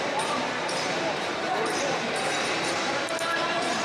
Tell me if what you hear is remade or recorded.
remade